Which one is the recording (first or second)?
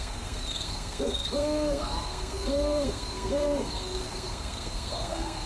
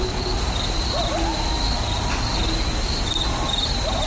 second